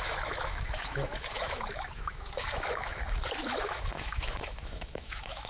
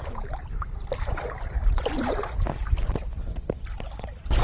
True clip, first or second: second